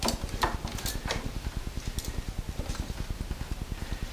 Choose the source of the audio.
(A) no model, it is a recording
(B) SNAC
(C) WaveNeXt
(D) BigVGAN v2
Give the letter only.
A